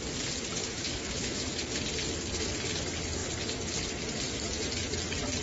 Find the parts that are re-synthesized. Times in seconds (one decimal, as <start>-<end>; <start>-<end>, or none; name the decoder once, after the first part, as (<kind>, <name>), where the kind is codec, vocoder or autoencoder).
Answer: 0.6-1.5 (autoencoder, DAC-VAE)